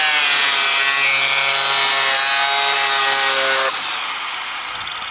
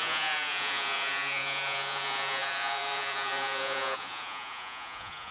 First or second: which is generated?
second